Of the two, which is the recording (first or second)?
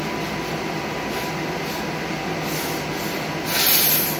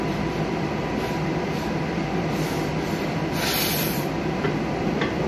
first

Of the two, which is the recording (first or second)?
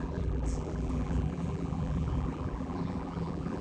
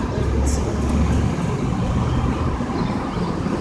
second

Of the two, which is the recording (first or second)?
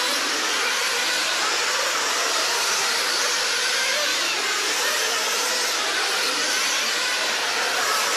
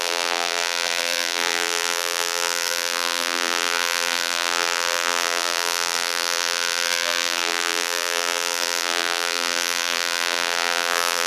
first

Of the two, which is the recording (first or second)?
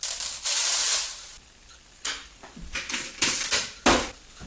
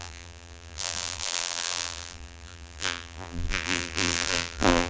first